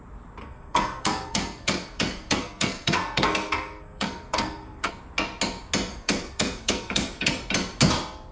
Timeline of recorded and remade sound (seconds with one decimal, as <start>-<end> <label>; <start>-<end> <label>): 0.0-0.4 recorded; 0.4-4.9 remade; 4.9-5.9 recorded; 5.9-7.4 remade; 7.4-8.3 recorded